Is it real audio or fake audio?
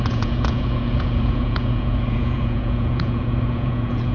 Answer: fake